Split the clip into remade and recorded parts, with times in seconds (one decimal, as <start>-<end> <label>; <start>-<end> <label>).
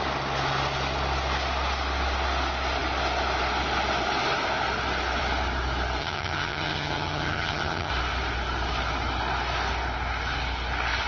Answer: 0.0-6.0 recorded; 6.0-7.9 remade; 7.9-11.1 recorded